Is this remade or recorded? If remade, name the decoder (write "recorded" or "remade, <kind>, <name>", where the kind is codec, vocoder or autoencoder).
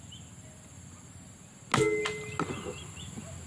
recorded